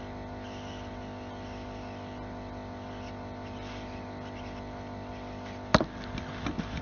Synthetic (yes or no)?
no